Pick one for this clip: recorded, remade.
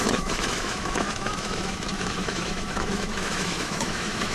remade